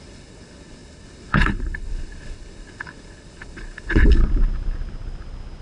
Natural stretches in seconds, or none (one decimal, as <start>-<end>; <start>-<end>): 4.2-5.6

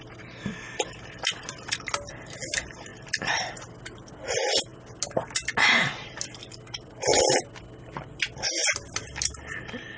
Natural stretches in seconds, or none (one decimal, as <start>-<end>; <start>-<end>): 0.0-10.0

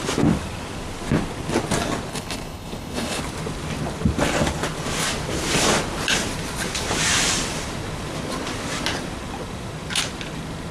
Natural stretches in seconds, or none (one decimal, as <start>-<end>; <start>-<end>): 0.0-2.1; 3.2-10.7

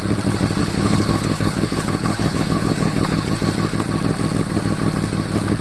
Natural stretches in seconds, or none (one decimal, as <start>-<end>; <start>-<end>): 0.0-0.6; 3.3-5.6